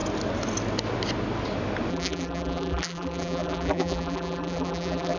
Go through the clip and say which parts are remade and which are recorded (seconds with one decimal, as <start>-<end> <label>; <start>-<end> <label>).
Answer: 0.0-1.9 recorded; 1.9-5.2 remade